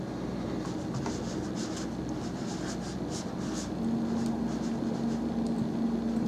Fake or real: real